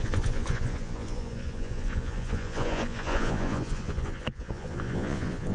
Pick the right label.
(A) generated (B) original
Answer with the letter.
A